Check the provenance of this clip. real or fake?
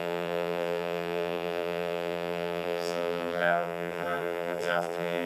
fake